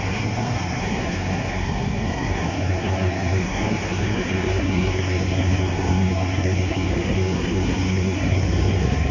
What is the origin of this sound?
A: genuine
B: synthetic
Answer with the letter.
B